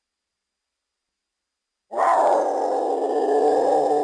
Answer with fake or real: real